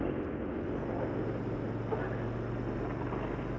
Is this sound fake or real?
real